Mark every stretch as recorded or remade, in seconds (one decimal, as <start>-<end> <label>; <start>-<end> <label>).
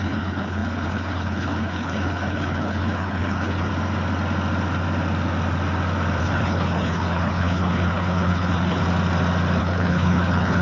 0.0-3.7 remade; 3.7-6.2 recorded; 6.2-8.8 remade; 8.8-9.6 recorded; 9.6-10.6 remade